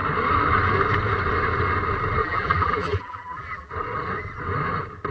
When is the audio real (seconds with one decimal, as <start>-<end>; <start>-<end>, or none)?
0.0-2.2; 3.7-5.1